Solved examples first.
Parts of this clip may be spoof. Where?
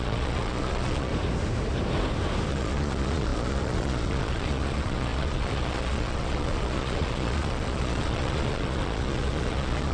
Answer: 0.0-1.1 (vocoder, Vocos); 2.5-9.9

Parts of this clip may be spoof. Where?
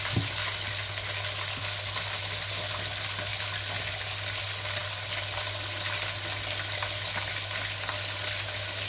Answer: none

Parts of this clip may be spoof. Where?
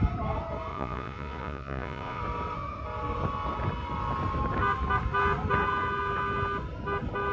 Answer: 0.7-2.2 (vocoder, Vocos)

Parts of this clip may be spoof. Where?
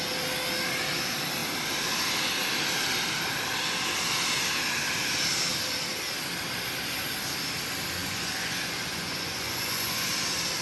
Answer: 8.0-10.1 (vocoder, Vocos)